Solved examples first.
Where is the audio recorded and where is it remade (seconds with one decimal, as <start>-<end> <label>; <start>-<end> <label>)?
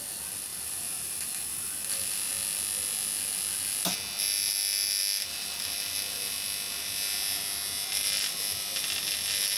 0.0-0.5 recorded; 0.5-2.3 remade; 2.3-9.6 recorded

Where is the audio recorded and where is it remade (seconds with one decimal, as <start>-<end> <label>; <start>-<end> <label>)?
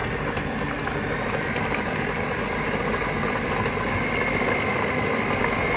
0.0-5.8 recorded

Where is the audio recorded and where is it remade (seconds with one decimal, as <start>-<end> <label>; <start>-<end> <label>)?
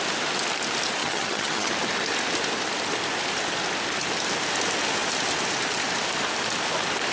0.0-1.0 recorded; 1.0-1.7 remade; 1.7-7.1 recorded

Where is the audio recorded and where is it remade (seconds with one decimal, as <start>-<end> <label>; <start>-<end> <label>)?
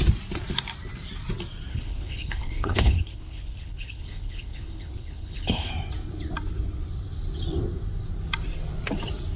0.0-1.7 recorded; 1.7-5.7 remade; 5.7-9.4 recorded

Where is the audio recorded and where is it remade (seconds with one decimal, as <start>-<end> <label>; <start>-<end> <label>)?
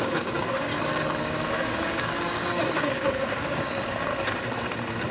0.0-0.7 remade; 0.7-1.2 recorded; 1.2-4.1 remade; 4.1-5.1 recorded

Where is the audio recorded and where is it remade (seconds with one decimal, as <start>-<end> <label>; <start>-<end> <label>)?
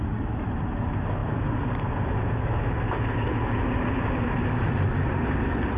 0.0-5.8 recorded